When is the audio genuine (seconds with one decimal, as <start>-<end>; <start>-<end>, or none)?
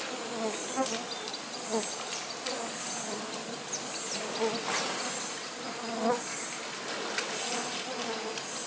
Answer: 0.0-8.7